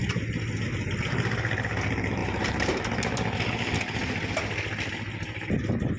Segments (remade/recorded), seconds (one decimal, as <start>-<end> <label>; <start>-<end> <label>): 0.0-2.2 recorded; 2.2-2.8 remade; 2.8-6.0 recorded